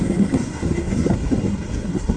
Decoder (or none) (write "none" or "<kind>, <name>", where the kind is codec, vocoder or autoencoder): codec, SNAC